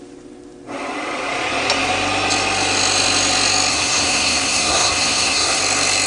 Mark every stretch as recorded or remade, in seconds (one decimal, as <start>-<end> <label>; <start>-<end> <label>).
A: 0.0-3.7 recorded; 3.7-5.6 remade; 5.6-6.1 recorded